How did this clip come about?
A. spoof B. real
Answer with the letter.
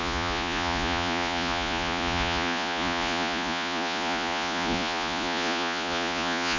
A